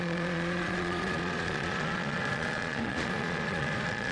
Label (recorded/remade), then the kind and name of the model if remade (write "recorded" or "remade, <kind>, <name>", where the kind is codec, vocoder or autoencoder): remade, vocoder, Vocos